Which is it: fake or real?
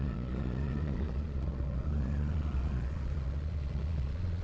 fake